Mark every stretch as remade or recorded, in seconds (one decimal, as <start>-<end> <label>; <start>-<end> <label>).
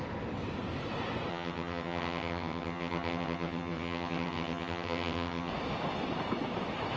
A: 0.0-1.3 recorded; 1.3-5.5 remade; 5.5-7.0 recorded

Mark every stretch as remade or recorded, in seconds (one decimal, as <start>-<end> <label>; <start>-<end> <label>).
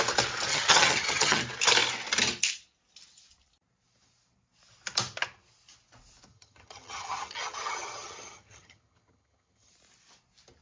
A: 0.0-0.5 recorded; 0.5-1.4 remade; 1.4-6.3 recorded; 6.3-9.7 remade; 9.7-10.6 recorded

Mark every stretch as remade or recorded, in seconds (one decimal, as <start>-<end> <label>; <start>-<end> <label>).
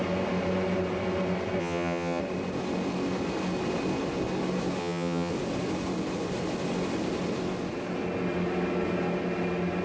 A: 0.0-1.6 recorded; 1.6-2.2 remade; 2.2-4.8 recorded; 4.8-5.3 remade; 5.3-9.8 recorded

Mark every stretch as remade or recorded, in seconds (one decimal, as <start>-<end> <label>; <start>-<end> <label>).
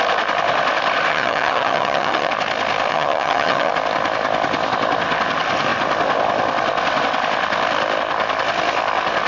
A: 0.0-1.1 recorded; 1.1-2.3 remade; 2.3-2.9 recorded; 2.9-3.7 remade; 3.7-9.3 recorded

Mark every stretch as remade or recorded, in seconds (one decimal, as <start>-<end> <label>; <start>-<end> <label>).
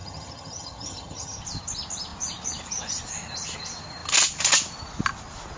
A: 0.0-1.4 remade; 1.4-5.6 recorded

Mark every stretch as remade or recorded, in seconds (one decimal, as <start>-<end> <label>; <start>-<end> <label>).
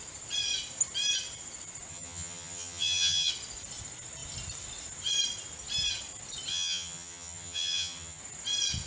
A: 0.0-1.9 recorded; 1.9-3.3 remade; 3.3-6.5 recorded; 6.5-8.2 remade; 8.2-8.9 recorded